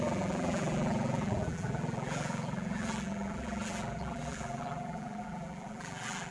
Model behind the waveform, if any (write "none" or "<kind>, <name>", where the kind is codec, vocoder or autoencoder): vocoder, BigVGAN v2